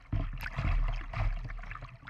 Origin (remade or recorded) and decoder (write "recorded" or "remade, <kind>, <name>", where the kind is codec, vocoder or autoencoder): recorded